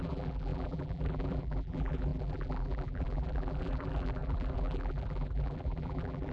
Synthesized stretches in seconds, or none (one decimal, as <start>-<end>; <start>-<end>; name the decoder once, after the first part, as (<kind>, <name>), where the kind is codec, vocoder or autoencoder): 0.0-6.3 (vocoder, BigVGAN v2)